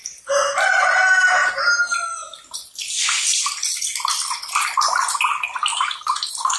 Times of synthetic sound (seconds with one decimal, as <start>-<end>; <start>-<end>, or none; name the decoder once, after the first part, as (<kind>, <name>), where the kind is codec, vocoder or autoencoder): 0.0-1.5 (vocoder, BigVGAN v2); 5.7-6.6